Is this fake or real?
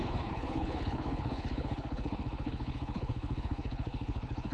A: fake